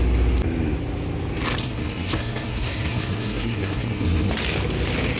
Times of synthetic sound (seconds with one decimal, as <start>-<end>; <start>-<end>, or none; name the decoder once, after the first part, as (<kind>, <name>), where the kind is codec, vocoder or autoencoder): 1.6-4.3 (codec, SNAC)